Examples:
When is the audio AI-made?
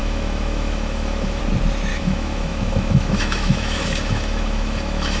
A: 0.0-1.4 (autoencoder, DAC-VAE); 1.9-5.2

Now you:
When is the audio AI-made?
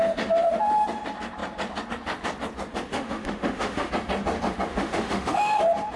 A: 2.9-3.9 (autoencoder, DAC-VAE); 4.7-5.6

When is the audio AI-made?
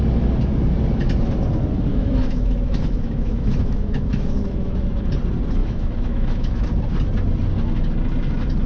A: 1.9-5.0 (autoencoder, DAC-VAE); 5.6-6.7